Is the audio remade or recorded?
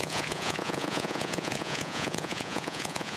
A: remade